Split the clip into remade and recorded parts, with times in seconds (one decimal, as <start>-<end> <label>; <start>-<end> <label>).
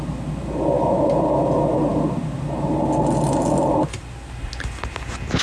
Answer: 0.0-5.4 recorded